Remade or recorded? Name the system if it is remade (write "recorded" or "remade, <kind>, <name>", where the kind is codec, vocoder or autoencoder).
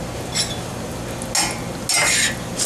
recorded